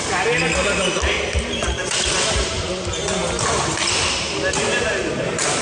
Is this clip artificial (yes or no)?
no